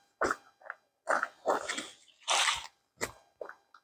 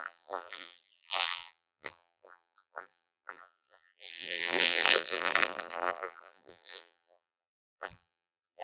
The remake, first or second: second